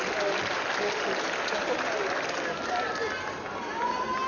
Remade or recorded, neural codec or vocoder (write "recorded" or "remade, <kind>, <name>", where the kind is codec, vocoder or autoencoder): recorded